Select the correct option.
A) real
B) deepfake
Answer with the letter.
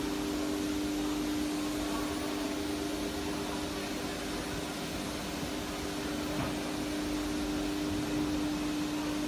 A